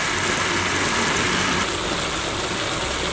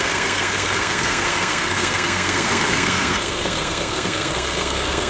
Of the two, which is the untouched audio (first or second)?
first